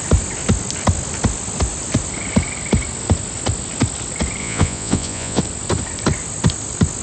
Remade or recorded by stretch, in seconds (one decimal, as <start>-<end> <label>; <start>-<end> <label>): 0.0-4.4 recorded; 4.4-5.4 remade; 5.4-7.0 recorded